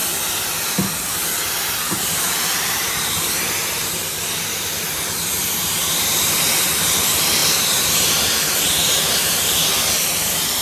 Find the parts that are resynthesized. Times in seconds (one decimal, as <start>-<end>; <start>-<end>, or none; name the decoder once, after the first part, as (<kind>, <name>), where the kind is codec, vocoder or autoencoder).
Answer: 1.8-10.6 (vocoder, BigVGAN v2)